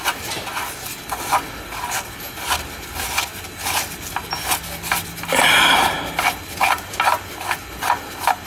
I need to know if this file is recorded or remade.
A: recorded